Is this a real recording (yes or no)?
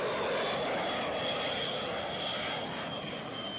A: yes